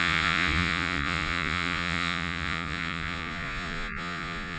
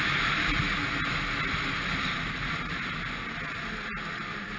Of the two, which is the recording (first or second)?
second